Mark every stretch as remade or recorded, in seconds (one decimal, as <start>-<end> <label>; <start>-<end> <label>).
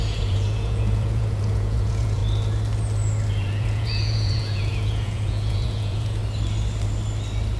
0.0-2.2 remade; 2.2-3.3 recorded; 3.3-6.2 remade; 6.2-7.6 recorded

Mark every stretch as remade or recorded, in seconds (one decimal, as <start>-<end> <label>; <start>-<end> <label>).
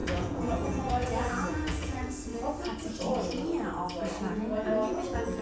0.0-2.3 remade; 2.3-4.3 recorded; 4.3-5.4 remade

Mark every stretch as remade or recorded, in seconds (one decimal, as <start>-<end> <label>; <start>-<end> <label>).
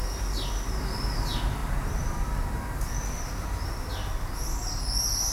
0.0-5.3 recorded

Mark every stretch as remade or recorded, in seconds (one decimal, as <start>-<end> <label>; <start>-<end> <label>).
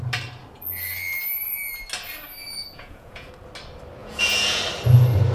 0.0-2.4 recorded; 2.4-3.3 remade; 3.3-4.0 recorded; 4.0-4.6 remade; 4.6-5.3 recorded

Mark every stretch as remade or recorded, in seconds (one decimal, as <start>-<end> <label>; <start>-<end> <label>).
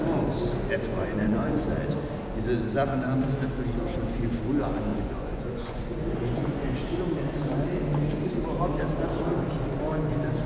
0.0-0.9 recorded; 0.9-1.7 remade; 1.7-4.9 recorded; 4.9-7.0 remade; 7.0-10.5 recorded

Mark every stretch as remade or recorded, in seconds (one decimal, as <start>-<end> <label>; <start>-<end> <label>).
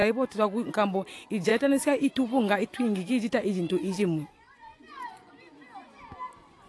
0.0-0.7 remade; 0.7-1.5 recorded; 1.5-5.3 remade; 5.3-6.7 recorded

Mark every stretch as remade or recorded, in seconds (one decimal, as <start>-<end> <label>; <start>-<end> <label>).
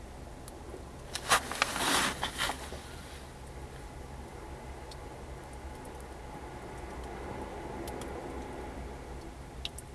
0.0-9.9 recorded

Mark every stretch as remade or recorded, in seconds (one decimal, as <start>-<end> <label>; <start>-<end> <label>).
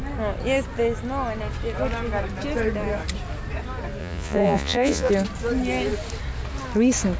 0.0-4.0 recorded; 4.0-5.1 remade; 5.1-7.2 recorded